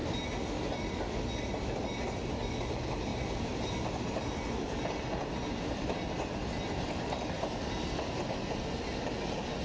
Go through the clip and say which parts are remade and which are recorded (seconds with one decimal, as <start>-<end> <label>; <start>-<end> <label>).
0.0-0.9 remade; 0.9-3.1 recorded; 3.1-4.9 remade; 4.9-9.6 recorded